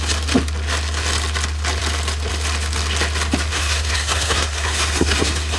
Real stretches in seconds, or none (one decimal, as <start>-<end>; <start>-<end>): 0.0-3.5